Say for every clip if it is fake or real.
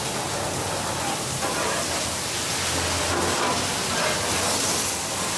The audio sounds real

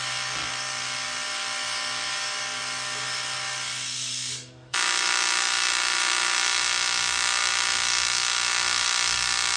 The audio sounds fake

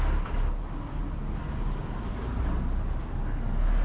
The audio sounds real